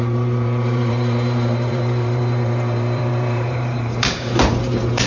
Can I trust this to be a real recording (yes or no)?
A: no